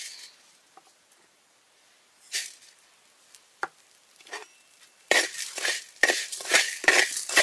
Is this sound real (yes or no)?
no